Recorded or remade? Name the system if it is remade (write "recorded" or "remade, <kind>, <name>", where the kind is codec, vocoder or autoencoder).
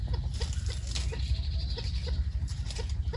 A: recorded